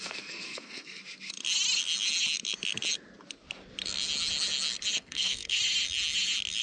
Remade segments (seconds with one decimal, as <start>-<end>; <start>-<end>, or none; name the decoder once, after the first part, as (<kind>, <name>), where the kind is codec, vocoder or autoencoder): 0.0-1.0 (codec, SNAC); 5.0-5.6

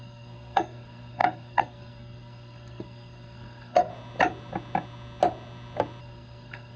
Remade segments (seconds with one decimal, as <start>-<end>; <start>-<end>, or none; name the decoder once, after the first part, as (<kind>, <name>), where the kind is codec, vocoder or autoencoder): 0.0-3.9 (codec, SNAC); 6.0-6.8

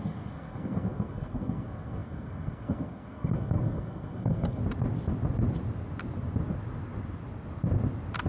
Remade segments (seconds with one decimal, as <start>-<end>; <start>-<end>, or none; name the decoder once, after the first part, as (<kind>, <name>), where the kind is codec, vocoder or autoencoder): 0.0-4.6 (codec, SNAC)

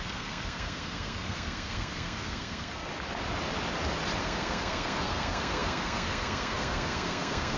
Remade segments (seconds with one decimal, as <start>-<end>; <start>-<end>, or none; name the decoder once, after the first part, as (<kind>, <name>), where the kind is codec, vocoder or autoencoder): 0.0-2.9 (codec, SNAC); 4.2-7.6

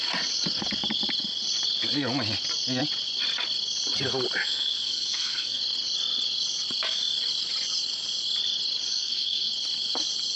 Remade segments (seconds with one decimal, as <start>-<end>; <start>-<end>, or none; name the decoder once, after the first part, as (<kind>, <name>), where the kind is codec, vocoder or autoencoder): 4.4-5.6 (codec, SNAC); 8.9-9.5